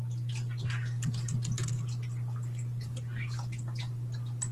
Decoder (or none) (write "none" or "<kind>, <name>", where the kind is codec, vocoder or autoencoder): none